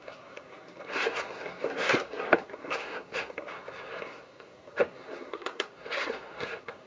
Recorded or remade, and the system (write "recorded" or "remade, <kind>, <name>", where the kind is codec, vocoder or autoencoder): remade, codec, SNAC